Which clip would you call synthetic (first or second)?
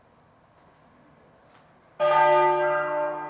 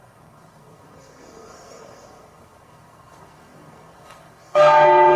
second